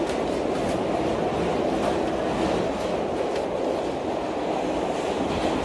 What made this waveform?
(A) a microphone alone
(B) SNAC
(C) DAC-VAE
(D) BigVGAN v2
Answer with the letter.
A